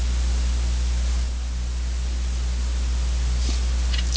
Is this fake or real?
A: real